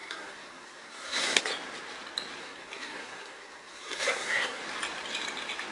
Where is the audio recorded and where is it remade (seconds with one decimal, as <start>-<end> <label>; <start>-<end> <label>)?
0.0-1.4 remade; 1.4-2.4 recorded; 2.4-4.6 remade; 4.6-5.7 recorded